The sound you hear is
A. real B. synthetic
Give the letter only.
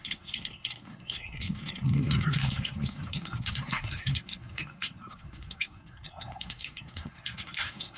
B